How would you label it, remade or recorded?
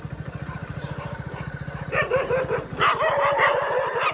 recorded